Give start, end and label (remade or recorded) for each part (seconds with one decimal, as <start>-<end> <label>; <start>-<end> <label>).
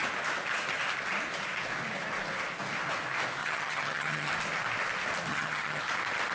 0.0-3.4 recorded; 3.4-4.3 remade; 4.3-5.3 recorded; 5.3-5.8 remade; 5.8-6.3 recorded